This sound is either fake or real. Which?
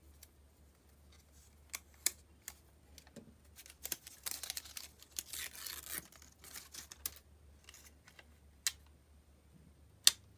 real